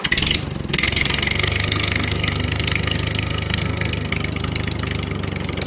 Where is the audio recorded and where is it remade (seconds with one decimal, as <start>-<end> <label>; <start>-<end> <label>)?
0.0-0.7 recorded; 0.7-4.1 remade; 4.1-5.7 recorded